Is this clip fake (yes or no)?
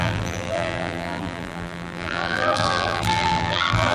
yes